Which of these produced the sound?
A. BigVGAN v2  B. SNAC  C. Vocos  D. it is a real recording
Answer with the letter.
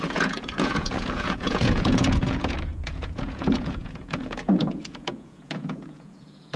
C